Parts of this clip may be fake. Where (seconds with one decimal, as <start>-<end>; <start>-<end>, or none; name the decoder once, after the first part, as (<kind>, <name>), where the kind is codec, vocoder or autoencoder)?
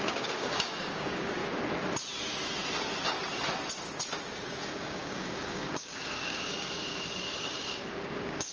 0.0-1.4 (codec, DAC); 4.6-8.5